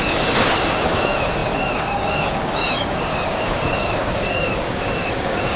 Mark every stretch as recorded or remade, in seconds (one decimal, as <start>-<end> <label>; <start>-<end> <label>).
0.0-5.6 remade